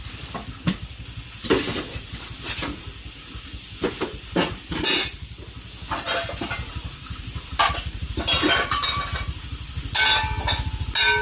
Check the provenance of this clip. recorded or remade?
recorded